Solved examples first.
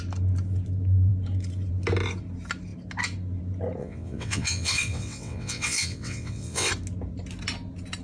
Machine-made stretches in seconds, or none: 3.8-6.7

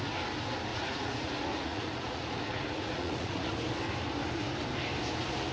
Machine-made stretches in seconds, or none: 0.7-3.5

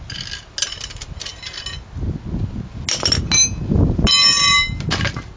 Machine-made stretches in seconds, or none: none

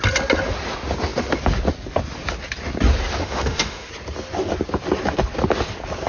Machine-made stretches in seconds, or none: 3.2-3.9

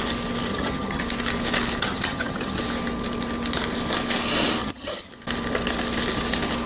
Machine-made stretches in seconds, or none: 0.5-1.0; 1.8-2.6; 4.6-5.1